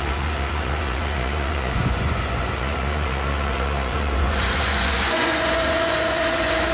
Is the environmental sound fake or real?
fake